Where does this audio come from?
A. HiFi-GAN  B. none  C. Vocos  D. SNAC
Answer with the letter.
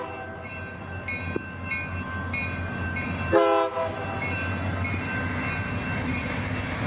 B